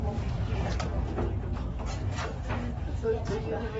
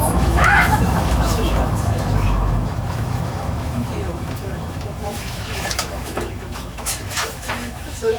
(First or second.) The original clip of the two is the first